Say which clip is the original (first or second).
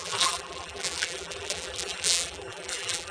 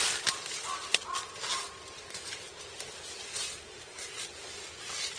second